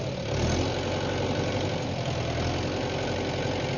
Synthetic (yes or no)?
no